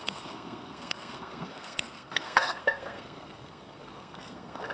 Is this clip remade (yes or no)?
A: yes